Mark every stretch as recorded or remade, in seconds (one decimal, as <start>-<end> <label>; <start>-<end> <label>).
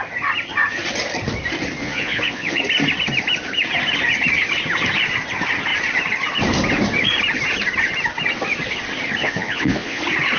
0.0-1.8 recorded; 1.8-2.6 remade; 2.6-9.2 recorded; 9.2-10.0 remade; 10.0-10.4 recorded